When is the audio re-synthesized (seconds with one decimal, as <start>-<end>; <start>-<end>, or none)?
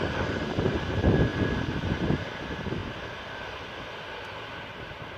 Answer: 2.8-5.2